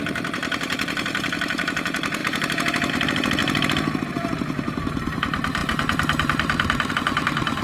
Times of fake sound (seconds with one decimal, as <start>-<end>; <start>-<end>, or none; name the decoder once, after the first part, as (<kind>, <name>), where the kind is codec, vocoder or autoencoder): 0.0-3.4 (vocoder, BigVGAN v2); 4.1-7.6